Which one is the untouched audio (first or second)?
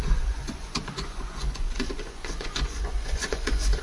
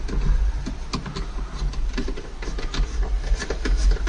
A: second